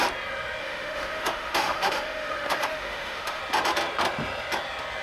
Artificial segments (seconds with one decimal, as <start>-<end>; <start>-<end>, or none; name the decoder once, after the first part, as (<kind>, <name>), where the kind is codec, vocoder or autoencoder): 0.6-3.4 (autoencoder, DAC-VAE)